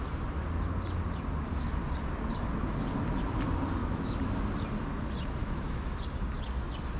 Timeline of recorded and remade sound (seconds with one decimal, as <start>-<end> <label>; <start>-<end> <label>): 0.0-3.8 recorded; 3.8-4.4 remade; 4.4-5.4 recorded; 5.4-6.0 remade; 6.0-7.0 recorded